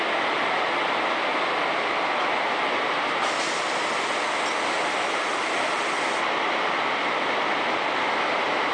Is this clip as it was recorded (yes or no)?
yes